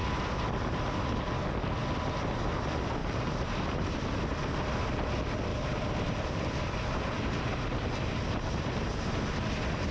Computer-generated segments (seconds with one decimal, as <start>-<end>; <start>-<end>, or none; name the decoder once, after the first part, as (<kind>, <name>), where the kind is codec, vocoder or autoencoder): 3.0-4.0 (vocoder, BigVGAN v2); 5.5-8.7